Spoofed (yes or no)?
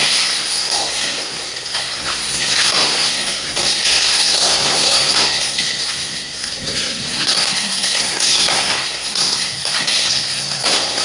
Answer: yes